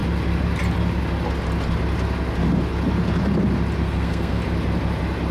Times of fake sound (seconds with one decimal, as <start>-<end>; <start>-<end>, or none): 3.8-4.4